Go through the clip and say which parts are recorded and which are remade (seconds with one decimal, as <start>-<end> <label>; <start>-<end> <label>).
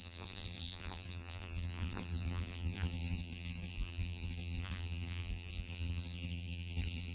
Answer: 0.0-7.1 remade